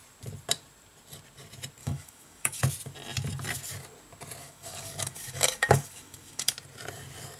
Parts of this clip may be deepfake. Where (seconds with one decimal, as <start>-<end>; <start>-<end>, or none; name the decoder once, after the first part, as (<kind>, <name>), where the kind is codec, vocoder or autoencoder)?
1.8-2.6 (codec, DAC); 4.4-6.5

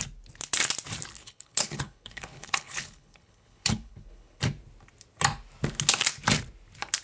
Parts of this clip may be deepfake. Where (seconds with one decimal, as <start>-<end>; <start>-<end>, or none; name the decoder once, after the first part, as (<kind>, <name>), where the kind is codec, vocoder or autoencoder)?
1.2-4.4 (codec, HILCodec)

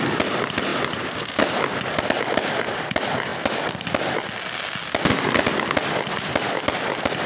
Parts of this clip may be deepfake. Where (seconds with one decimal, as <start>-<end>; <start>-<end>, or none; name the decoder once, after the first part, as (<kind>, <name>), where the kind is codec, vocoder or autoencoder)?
none

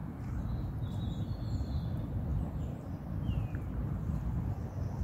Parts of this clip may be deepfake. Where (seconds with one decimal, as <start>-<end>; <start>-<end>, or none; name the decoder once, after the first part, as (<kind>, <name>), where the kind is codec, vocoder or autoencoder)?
none

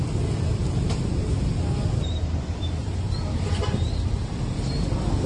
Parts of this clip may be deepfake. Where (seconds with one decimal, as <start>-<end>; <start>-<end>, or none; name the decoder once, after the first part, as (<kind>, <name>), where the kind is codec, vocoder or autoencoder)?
0.6-1.5 (vocoder, BigVGAN v2); 2.8-3.4